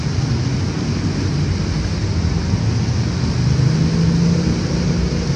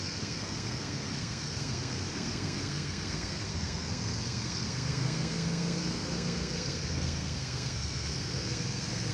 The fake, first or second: second